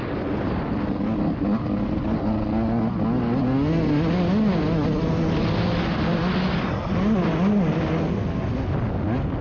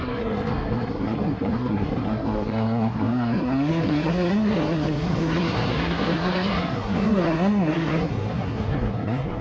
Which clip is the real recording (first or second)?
first